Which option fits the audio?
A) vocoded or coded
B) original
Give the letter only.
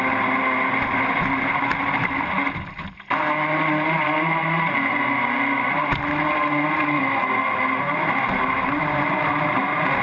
B